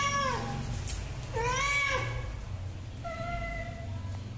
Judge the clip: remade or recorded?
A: recorded